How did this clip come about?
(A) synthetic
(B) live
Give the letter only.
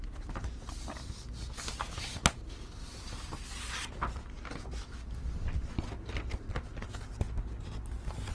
B